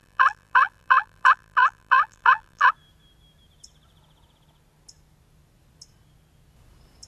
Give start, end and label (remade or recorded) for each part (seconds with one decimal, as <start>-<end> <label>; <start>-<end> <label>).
0.0-2.7 remade; 2.7-7.1 recorded